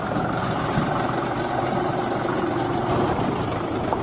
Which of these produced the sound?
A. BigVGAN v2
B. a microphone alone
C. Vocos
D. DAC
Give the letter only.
B